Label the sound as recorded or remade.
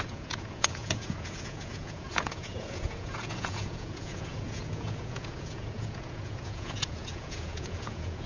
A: remade